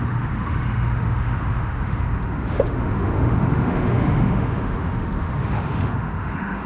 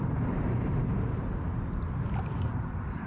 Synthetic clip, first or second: first